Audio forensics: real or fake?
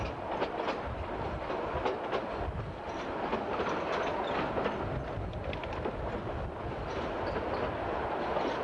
real